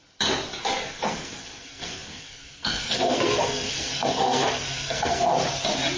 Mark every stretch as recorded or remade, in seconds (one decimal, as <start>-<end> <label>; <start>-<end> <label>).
0.0-0.6 recorded; 0.6-5.3 remade; 5.3-6.0 recorded